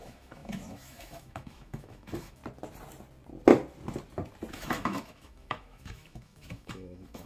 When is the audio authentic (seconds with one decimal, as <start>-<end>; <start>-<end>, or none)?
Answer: 2.4-4.5